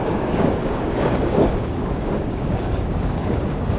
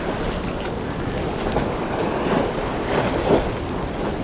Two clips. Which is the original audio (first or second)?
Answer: second